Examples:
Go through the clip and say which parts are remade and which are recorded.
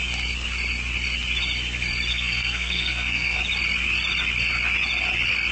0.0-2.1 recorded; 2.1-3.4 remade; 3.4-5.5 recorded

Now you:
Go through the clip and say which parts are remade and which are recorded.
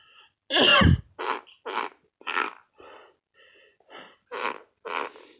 0.0-5.4 recorded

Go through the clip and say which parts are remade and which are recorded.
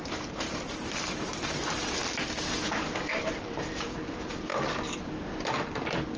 0.0-2.0 remade; 2.0-2.7 recorded; 2.7-4.5 remade; 4.5-6.2 recorded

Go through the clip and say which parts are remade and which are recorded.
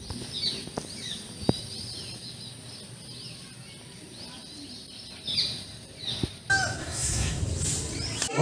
0.0-6.8 recorded; 6.8-7.4 remade; 7.4-8.4 recorded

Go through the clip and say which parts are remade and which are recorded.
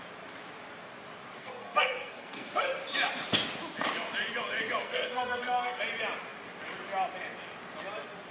0.0-1.4 recorded; 1.4-2.5 remade; 2.5-4.8 recorded; 4.8-5.8 remade; 5.8-8.3 recorded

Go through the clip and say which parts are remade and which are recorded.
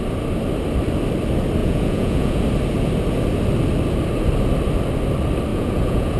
0.0-1.6 recorded; 1.6-2.4 remade; 2.4-5.5 recorded; 5.5-6.2 remade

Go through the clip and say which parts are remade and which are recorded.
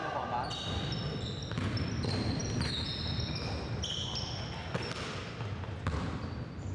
0.0-6.7 recorded